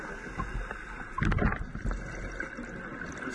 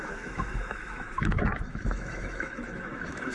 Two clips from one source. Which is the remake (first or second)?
second